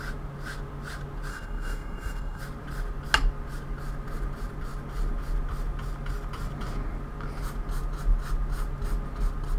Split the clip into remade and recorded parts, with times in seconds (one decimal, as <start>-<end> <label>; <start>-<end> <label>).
0.0-1.3 recorded; 1.3-2.4 remade; 2.4-9.6 recorded